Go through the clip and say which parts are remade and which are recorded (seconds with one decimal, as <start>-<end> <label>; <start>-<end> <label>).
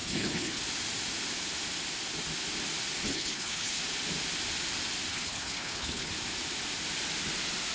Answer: 0.0-0.6 remade; 0.6-3.0 recorded; 3.0-3.8 remade; 3.8-5.1 recorded; 5.1-6.1 remade; 6.1-7.7 recorded